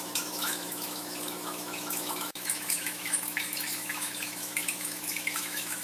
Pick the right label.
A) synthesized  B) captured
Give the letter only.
A